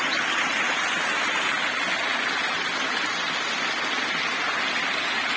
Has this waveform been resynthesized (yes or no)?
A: no